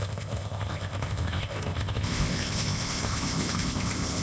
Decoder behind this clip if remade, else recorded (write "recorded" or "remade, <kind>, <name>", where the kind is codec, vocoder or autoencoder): remade, codec, ZipCodec